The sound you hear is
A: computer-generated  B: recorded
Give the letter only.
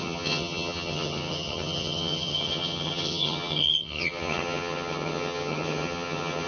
A